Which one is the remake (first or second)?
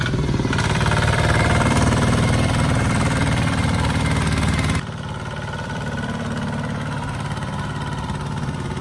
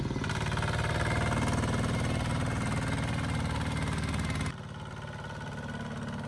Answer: first